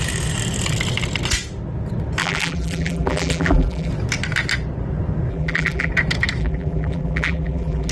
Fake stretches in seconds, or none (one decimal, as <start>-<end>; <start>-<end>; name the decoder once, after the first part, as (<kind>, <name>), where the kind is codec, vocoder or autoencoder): 2.2-3.9 (vocoder, BigVGAN v2); 5.3-5.9; 6.4-7.9